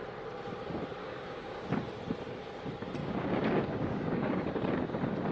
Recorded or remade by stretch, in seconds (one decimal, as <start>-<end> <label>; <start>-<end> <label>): 0.0-1.0 recorded; 1.0-1.7 remade; 1.7-3.0 recorded; 3.0-4.6 remade; 4.6-5.3 recorded

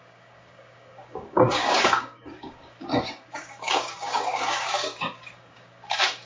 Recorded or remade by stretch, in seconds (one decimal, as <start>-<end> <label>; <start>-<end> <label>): 0.0-6.3 remade

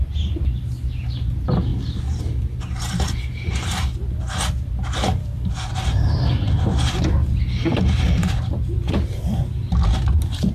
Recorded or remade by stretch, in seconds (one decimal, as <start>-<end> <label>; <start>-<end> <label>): 0.0-5.2 recorded; 5.2-5.7 remade; 5.7-10.5 recorded

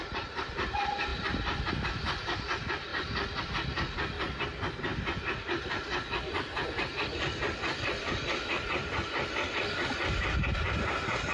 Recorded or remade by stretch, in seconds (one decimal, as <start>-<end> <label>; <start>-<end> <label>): 0.0-11.3 recorded

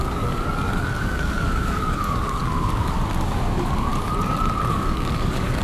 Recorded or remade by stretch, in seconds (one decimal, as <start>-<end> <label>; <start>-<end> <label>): 0.0-3.9 remade; 3.9-4.7 recorded; 4.7-5.6 remade

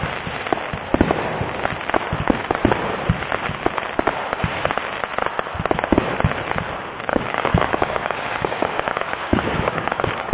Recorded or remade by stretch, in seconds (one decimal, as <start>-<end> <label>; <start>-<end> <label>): 0.0-7.1 recorded; 7.1-10.3 remade

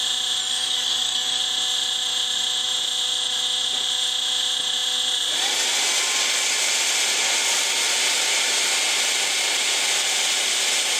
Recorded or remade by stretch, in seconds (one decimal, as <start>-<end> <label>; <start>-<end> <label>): 0.0-0.4 recorded; 0.4-1.4 remade; 1.4-11.0 recorded